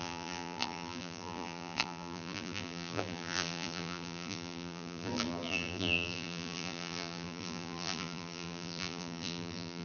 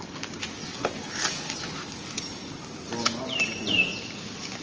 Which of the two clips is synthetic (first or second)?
first